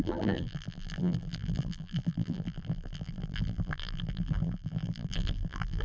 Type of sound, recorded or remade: remade